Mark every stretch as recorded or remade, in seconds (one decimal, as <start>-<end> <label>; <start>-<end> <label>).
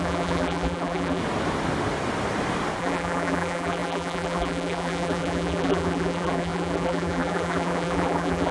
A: 0.0-1.2 remade; 1.2-2.8 recorded; 2.8-8.5 remade